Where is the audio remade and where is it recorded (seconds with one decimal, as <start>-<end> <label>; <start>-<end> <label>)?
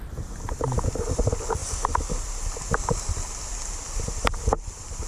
0.0-5.1 recorded